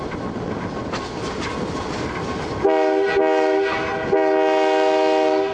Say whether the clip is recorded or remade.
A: recorded